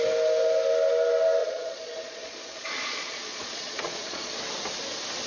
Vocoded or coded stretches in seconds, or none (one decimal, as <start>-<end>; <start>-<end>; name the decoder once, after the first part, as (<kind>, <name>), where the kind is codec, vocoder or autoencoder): 1.4-4.4 (vocoder, Vocos)